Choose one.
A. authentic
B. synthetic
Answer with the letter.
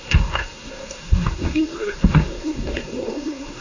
B